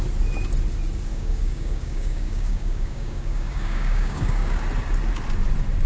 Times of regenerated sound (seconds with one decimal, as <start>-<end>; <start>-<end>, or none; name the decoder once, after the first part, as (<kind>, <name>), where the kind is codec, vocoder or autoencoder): 1.1-4.6 (codec, DAC)